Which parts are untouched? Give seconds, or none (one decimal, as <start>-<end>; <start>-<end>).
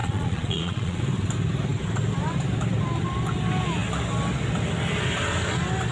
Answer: 1.0-5.9